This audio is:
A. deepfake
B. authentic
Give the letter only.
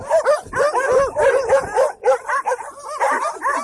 B